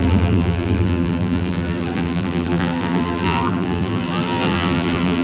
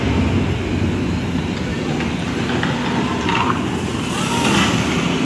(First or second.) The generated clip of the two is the first